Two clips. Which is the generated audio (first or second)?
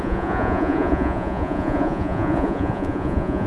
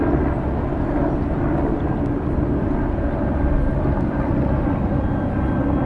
first